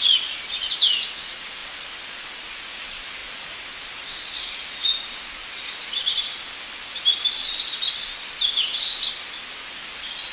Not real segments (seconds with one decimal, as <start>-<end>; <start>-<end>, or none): 0.0-5.4; 9.7-10.3